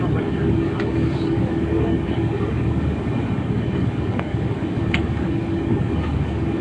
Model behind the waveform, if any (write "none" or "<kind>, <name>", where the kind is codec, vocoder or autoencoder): codec, DAC